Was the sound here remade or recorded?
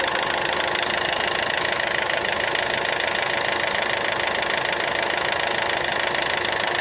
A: recorded